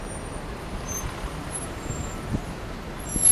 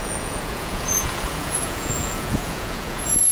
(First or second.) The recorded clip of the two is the first